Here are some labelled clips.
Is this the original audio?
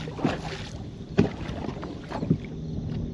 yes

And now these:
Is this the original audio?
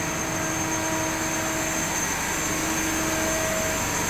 yes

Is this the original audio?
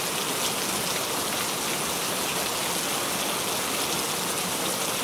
yes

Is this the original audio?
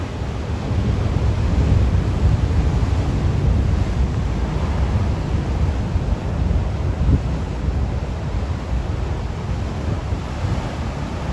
yes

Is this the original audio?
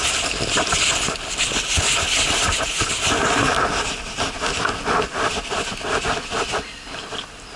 yes